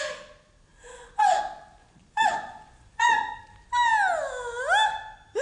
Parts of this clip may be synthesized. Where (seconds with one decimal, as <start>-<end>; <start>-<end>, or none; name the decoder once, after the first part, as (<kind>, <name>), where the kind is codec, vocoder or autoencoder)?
0.7-1.4 (vocoder, Vocos); 1.8-3.4